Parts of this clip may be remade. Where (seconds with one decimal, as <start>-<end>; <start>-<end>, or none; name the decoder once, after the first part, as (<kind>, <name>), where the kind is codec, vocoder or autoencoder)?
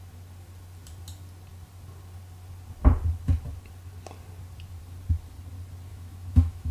5.9-6.7 (autoencoder, DAC-VAE)